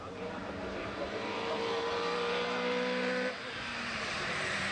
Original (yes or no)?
no